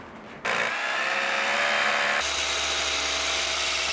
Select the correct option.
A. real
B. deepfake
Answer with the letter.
A